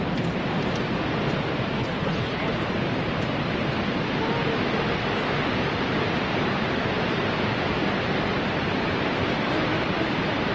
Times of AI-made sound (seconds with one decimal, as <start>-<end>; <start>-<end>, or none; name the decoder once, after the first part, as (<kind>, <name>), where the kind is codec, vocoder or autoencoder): 1.8-2.5 (codec, HILCodec)